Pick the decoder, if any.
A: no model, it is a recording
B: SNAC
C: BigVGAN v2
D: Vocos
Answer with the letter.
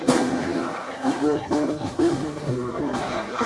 B